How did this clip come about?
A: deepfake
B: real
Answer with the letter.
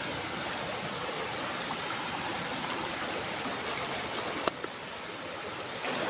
B